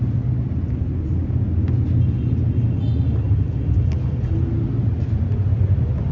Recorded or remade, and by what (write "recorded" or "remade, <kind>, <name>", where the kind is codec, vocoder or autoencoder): recorded